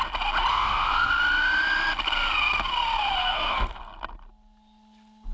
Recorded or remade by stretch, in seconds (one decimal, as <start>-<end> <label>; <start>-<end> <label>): 0.0-0.5 recorded; 0.5-1.1 remade; 1.1-3.2 recorded; 3.2-3.8 remade; 3.8-5.3 recorded